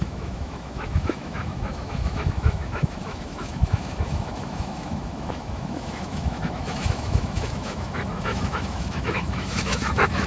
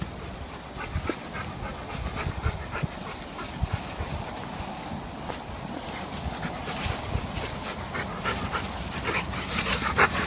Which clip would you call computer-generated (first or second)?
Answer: first